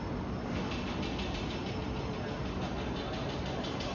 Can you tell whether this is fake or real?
real